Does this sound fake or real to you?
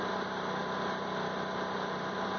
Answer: real